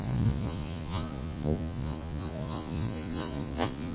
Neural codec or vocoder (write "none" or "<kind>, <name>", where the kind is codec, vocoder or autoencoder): vocoder, Vocos